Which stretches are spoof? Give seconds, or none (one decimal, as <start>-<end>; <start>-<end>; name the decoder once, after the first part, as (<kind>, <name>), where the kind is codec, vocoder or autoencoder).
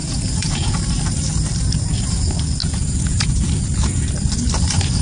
0.0-0.8 (vocoder, Vocos); 2.6-3.5